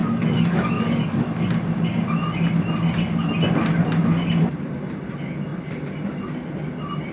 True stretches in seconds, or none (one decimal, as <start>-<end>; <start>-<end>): 1.2-7.1